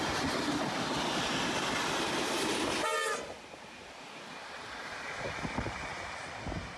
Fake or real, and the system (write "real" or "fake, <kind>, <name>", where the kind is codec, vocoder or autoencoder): real